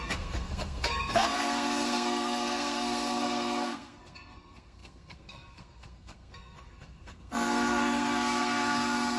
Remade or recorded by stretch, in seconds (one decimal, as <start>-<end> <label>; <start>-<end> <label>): 0.0-9.2 remade